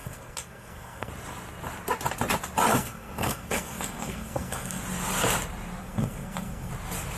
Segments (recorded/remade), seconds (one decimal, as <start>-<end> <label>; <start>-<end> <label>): 0.0-1.1 remade; 1.1-2.7 recorded; 2.7-4.8 remade; 4.8-5.8 recorded; 5.8-6.7 remade; 6.7-7.2 recorded